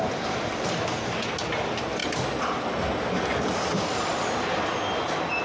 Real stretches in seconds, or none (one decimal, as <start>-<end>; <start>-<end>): 0.0-5.4